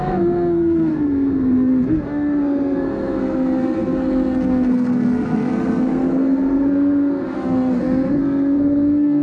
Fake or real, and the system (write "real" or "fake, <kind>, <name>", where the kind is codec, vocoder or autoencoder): fake, codec, SNAC